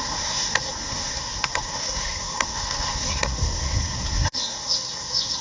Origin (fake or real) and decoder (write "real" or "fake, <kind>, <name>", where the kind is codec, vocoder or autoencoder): fake, codec, SNAC